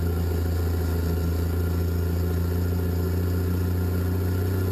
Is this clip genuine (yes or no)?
yes